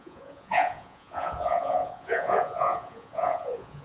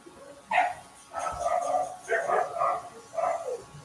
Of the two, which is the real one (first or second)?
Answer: second